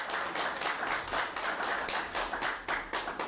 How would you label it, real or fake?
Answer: real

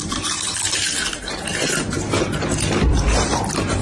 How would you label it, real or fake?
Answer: fake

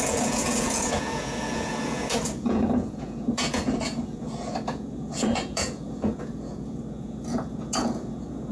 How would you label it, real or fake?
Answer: fake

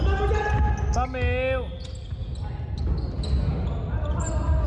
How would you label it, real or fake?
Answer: real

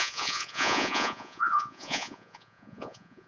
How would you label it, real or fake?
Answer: fake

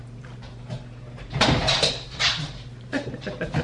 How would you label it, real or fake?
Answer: fake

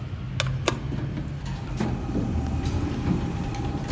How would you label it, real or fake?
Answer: real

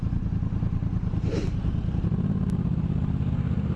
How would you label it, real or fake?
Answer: real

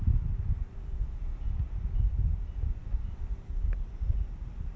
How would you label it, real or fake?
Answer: real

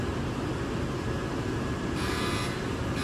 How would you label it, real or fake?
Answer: real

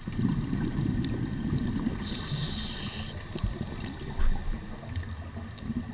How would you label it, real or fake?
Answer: real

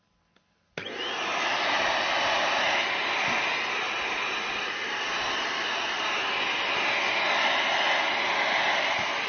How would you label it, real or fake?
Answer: real